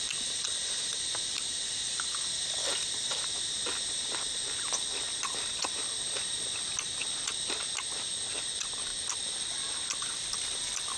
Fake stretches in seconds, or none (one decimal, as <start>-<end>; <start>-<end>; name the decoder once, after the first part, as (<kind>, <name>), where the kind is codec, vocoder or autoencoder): none